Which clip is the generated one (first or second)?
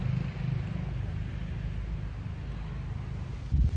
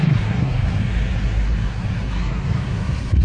second